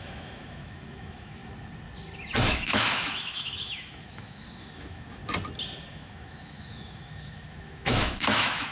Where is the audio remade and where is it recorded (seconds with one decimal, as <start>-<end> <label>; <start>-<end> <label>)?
0.0-1.4 remade; 1.4-2.4 recorded; 2.4-5.2 remade; 5.2-5.9 recorded; 5.9-8.7 remade